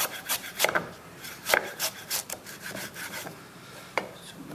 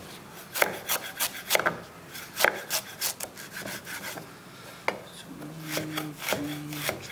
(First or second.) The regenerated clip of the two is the first